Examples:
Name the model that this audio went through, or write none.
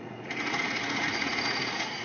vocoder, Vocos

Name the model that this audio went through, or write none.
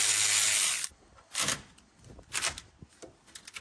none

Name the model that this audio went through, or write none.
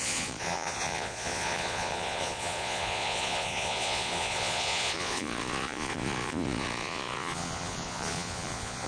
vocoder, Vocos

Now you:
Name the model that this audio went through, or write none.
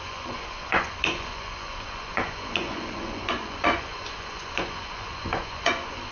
vocoder, Vocos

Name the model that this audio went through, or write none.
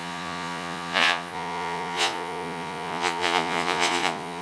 vocoder, Vocos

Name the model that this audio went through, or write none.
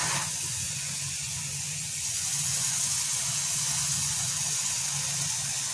vocoder, Vocos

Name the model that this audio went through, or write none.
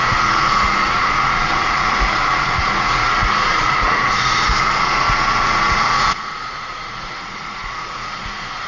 vocoder, Vocos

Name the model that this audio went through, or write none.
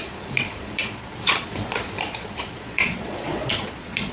vocoder, Vocos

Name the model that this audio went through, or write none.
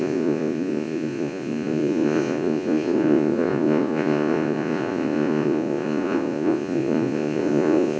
vocoder, Vocos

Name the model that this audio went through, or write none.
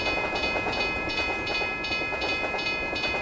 vocoder, Vocos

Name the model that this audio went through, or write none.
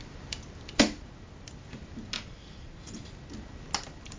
none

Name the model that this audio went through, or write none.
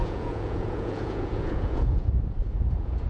vocoder, Vocos